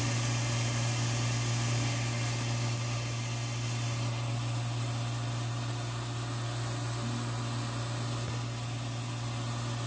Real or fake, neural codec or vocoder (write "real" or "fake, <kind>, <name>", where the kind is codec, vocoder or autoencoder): real